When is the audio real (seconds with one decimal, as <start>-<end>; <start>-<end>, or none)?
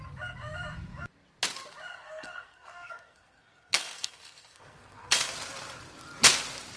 0.0-1.9; 5.3-6.8